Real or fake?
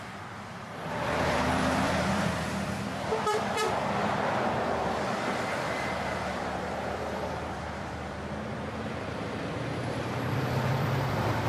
fake